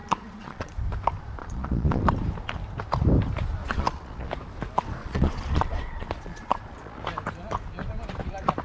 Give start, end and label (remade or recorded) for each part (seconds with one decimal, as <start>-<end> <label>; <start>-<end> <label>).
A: 0.0-0.7 remade; 0.7-1.4 recorded; 1.4-2.0 remade; 2.0-3.6 recorded; 3.6-4.3 remade; 4.3-5.0 recorded; 5.0-7.0 remade; 7.0-8.6 recorded